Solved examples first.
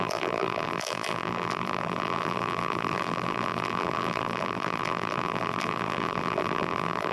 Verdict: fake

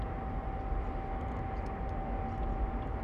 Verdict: real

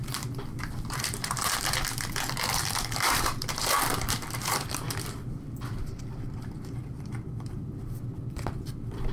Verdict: fake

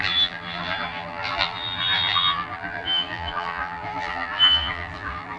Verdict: fake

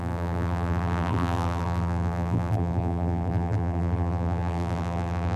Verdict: fake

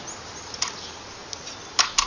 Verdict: real